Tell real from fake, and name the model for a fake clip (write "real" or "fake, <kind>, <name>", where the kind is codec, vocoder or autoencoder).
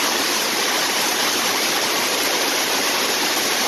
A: fake, vocoder, BigVGAN v2